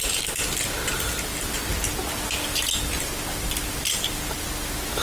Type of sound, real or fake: real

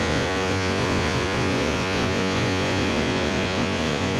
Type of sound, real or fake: fake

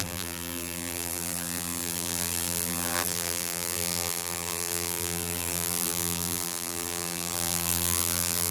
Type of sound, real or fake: fake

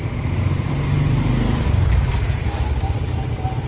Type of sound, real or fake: real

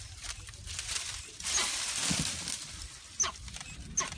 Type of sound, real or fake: real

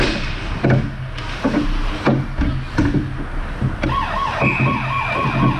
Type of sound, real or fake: real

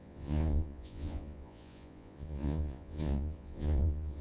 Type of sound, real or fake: fake